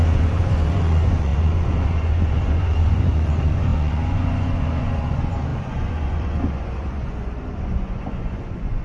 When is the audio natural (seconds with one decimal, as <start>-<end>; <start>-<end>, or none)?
none

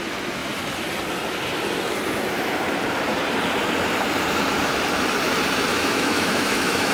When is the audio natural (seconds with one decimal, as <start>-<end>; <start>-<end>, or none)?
0.0-5.7

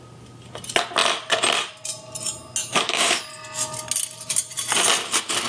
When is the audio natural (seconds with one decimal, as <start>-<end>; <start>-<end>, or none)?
0.0-2.6; 3.2-5.5

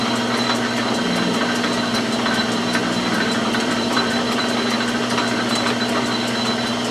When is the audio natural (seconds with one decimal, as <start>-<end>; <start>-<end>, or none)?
0.0-2.8; 4.4-5.0; 5.9-6.9

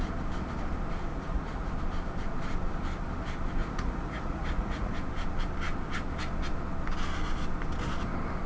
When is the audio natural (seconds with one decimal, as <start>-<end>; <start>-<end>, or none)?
0.0-1.1; 1.7-3.6; 4.9-8.5